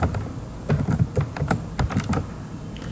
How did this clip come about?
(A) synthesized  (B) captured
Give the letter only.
B